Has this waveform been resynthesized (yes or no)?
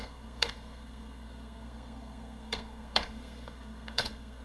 yes